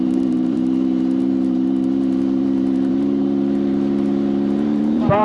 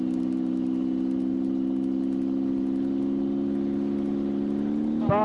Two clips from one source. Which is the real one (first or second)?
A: second